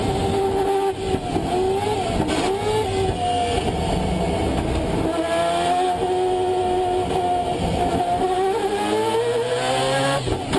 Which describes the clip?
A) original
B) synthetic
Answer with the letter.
A